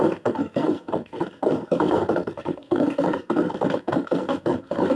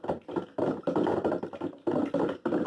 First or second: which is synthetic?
first